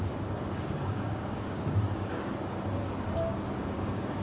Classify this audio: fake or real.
fake